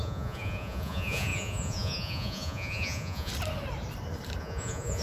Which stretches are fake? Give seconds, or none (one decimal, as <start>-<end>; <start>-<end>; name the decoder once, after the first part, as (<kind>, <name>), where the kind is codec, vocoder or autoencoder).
0.0-3.3 (vocoder, Vocos); 4.4-5.0